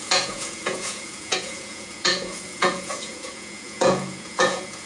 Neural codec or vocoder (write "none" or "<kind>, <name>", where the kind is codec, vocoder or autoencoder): vocoder, Vocos